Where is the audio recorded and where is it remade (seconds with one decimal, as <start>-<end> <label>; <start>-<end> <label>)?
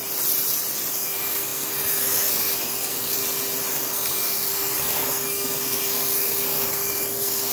0.0-0.9 recorded; 0.9-3.2 remade; 3.2-3.7 recorded; 3.7-7.5 remade